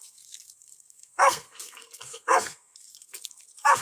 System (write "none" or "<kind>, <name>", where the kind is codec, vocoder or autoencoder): codec, SNAC